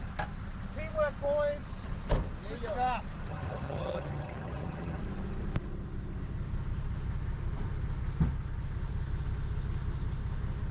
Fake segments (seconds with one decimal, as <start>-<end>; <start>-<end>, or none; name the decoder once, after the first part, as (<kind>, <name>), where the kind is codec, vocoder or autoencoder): 3.3-5.0 (vocoder, HiFi-GAN)